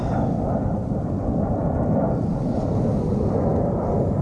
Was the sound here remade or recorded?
recorded